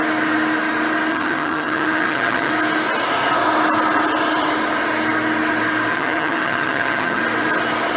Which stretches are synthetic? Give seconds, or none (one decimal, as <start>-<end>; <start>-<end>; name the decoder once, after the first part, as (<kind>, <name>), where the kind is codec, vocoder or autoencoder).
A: 1.1-2.5 (vocoder, HiFi-GAN); 5.9-7.2